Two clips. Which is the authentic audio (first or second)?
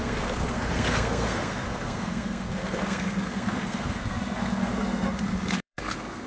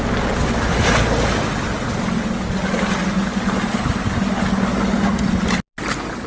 second